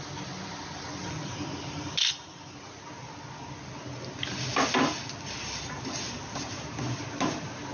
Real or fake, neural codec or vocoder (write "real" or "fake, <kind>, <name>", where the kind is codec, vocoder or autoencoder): real